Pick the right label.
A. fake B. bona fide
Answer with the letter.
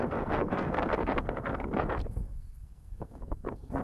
A